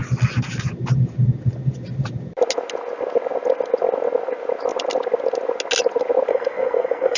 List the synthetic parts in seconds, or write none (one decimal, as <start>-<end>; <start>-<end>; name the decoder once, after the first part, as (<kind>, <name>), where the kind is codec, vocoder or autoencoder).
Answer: 6.3-7.2 (codec, SNAC)